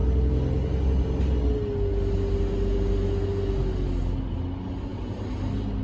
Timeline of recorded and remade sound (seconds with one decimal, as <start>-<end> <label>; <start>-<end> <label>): 0.0-5.8 recorded